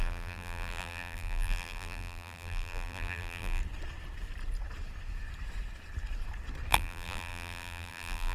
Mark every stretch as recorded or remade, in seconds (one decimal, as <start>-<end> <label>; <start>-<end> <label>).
0.0-3.6 remade; 3.6-6.7 recorded; 6.7-8.3 remade

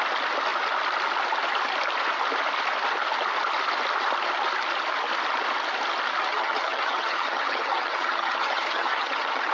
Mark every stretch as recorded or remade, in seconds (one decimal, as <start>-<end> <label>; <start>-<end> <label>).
0.0-6.3 recorded; 6.3-9.5 remade

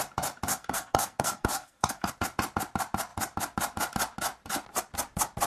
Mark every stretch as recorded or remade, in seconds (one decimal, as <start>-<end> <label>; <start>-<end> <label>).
0.0-0.5 recorded; 0.5-2.1 remade; 2.1-5.5 recorded

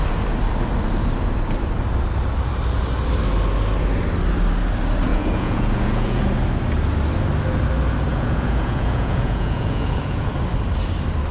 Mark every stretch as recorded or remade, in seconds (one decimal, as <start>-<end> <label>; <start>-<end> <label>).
0.0-5.1 recorded; 5.1-6.2 remade; 6.2-8.1 recorded; 8.1-10.3 remade; 10.3-11.3 recorded

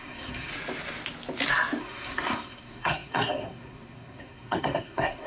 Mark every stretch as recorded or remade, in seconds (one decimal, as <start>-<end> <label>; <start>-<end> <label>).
0.0-0.5 remade; 0.5-1.8 recorded; 1.8-5.3 remade

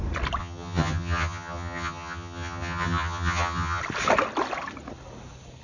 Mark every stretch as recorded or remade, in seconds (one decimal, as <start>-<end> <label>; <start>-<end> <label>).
0.0-0.4 recorded; 0.4-3.8 remade; 3.8-5.6 recorded

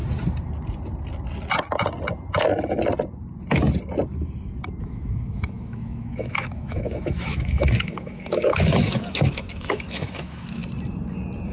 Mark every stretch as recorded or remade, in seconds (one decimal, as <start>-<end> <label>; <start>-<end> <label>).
0.0-4.8 recorded; 4.8-10.6 remade; 10.6-11.5 recorded